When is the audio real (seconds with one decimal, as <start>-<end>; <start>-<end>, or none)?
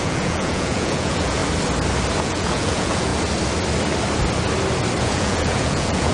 1.4-2.2; 3.1-5.0